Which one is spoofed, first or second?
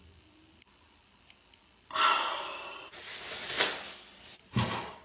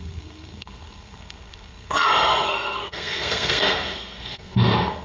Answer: second